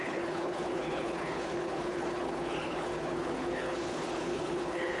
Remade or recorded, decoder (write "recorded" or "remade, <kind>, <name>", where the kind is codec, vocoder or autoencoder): remade, codec, HILCodec